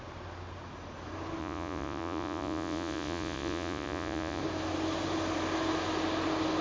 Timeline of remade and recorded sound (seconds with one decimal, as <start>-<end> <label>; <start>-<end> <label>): 0.0-1.4 recorded; 1.4-4.4 remade; 4.4-6.6 recorded